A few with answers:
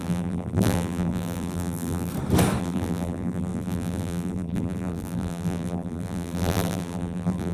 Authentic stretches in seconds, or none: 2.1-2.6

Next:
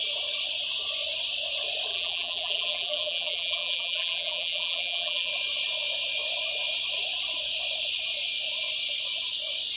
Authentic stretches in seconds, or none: 0.0-1.9; 5.3-9.8

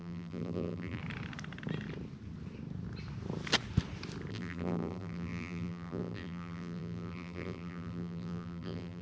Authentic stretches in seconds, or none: 1.0-4.3

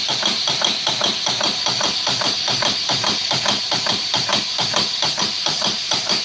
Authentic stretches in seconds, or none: 4.3-5.2

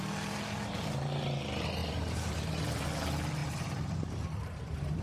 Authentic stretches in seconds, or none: 0.0-1.8; 2.4-3.4